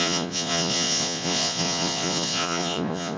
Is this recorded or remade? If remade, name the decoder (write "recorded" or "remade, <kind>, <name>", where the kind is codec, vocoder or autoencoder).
remade, vocoder, Vocos